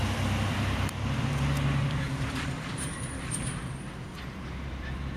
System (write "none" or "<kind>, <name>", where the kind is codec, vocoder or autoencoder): vocoder, BigVGAN v2